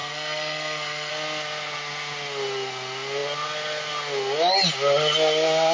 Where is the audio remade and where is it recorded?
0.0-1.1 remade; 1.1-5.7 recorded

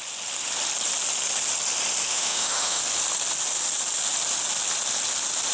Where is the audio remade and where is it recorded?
0.0-2.1 recorded; 2.1-2.8 remade; 2.8-5.5 recorded

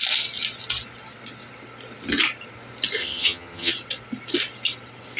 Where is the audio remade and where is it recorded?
0.0-3.0 recorded; 3.0-3.7 remade; 3.7-5.2 recorded

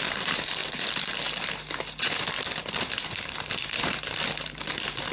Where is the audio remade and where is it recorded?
0.0-0.6 remade; 0.6-2.3 recorded; 2.3-5.1 remade